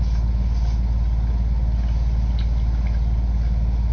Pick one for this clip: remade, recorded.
recorded